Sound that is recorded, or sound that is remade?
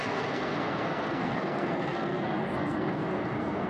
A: remade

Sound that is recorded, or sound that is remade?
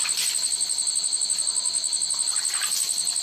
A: recorded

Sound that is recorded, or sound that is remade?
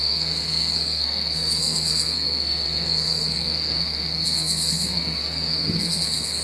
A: remade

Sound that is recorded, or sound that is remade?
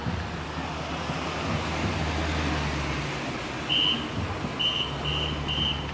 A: recorded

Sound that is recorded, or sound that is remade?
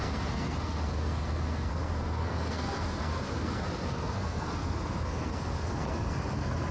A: remade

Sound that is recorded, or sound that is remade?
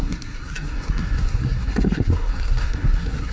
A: remade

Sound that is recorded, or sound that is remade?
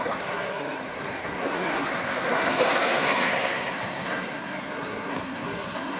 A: remade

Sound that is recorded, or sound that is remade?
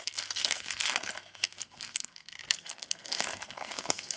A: remade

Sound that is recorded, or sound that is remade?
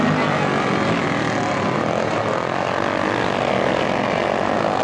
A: recorded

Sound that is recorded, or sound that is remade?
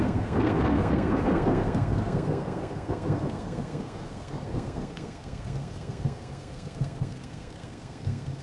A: remade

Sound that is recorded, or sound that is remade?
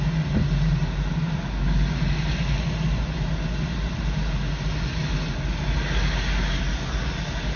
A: recorded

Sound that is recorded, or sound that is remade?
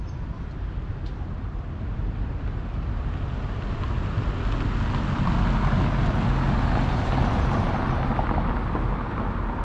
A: recorded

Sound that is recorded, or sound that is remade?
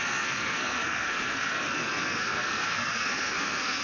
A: remade